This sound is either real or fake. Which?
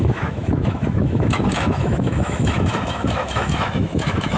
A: fake